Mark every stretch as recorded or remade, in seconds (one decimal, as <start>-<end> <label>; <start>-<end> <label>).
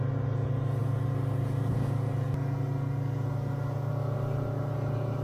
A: 0.0-5.2 recorded